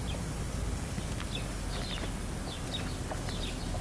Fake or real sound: real